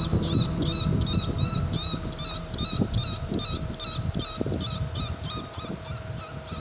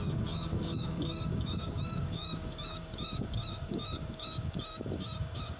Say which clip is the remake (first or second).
second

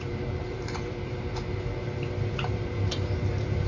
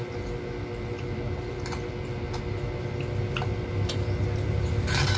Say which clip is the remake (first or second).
first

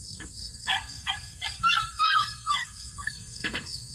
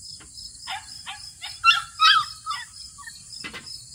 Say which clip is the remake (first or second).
first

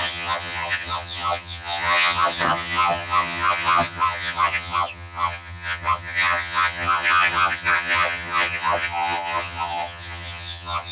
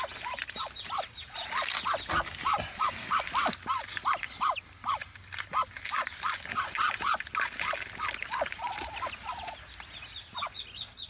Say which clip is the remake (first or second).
first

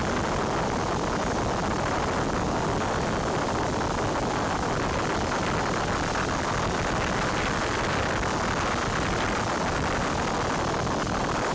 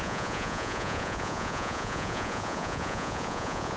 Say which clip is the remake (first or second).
second